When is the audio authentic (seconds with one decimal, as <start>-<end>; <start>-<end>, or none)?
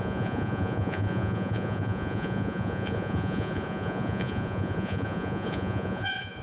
none